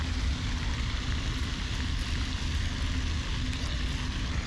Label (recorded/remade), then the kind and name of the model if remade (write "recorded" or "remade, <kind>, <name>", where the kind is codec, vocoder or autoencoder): recorded